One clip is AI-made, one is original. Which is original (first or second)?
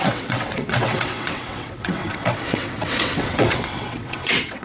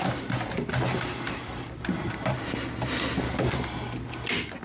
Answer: second